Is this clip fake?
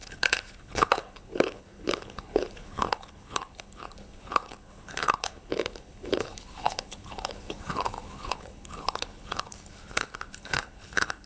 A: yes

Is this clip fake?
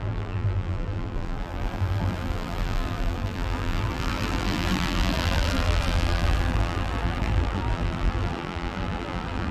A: yes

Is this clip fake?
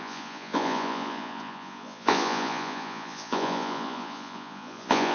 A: yes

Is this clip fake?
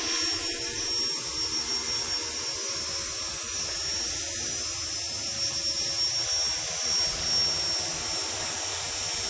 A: no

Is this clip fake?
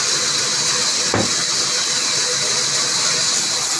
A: no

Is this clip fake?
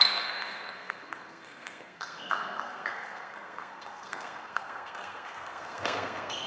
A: yes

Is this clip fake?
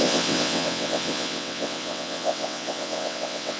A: yes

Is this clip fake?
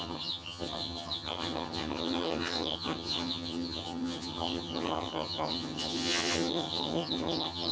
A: yes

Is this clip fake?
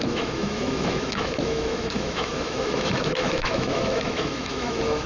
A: yes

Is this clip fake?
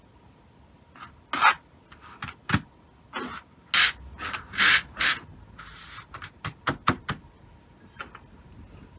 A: no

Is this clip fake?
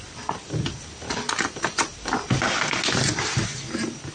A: no